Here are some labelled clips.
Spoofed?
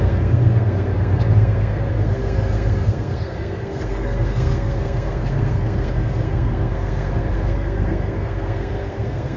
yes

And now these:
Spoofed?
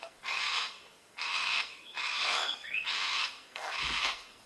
yes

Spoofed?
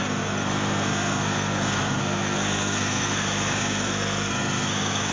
yes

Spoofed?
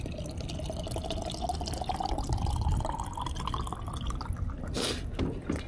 no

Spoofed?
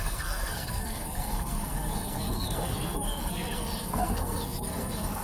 yes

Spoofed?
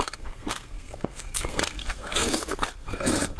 yes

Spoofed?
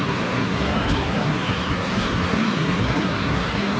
yes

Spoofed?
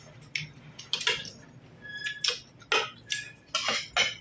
no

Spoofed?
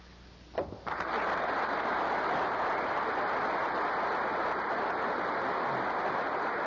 no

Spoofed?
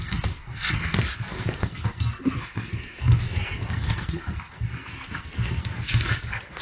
yes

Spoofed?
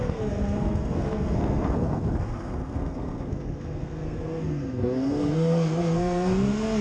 yes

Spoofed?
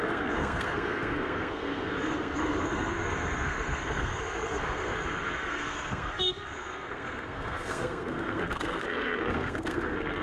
yes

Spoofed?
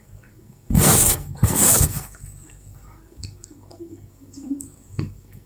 yes